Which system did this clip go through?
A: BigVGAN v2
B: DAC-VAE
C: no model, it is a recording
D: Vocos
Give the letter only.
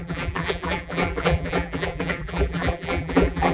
A